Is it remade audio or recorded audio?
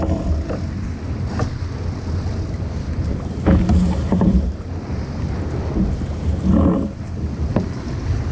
recorded